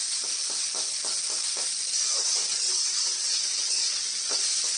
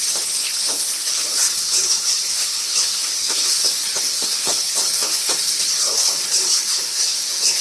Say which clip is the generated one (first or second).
second